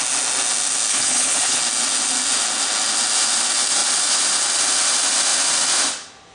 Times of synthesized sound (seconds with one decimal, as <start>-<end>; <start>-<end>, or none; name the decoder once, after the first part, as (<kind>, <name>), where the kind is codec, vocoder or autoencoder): 0.9-1.6 (codec, HILCodec)